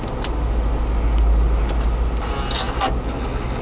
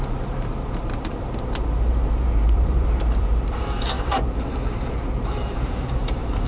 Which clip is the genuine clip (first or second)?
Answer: first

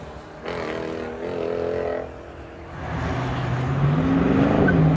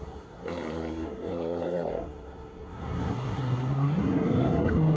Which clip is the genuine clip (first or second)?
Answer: first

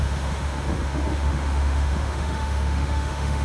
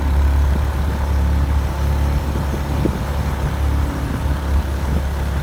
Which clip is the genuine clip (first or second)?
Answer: second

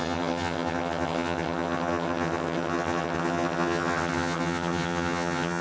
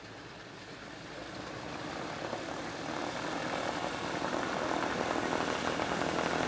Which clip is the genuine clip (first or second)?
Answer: second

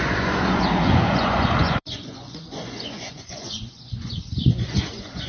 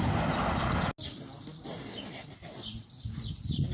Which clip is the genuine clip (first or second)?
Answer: second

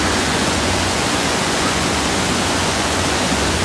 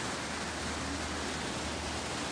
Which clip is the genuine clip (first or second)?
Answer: second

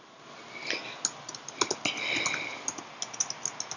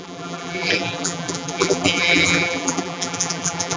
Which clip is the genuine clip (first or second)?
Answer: first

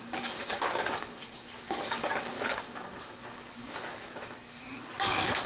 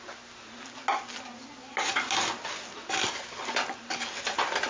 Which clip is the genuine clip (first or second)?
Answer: second